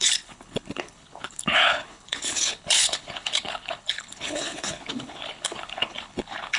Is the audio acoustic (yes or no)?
no